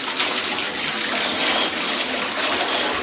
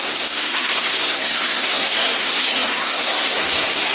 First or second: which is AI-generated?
second